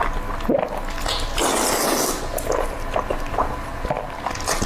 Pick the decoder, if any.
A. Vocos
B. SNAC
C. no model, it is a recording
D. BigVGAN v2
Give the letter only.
C